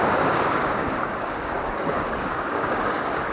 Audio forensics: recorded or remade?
remade